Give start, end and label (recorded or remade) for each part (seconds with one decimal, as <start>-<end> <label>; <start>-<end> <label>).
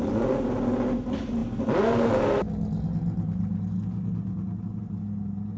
0.0-5.6 recorded